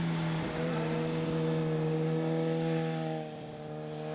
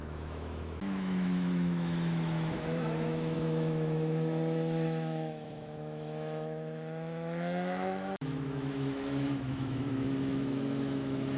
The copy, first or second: second